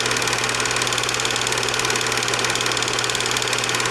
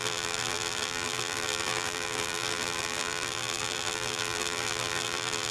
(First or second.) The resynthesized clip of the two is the second